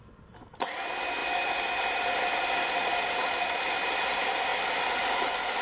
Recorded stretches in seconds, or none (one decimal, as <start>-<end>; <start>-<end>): 0.0-5.6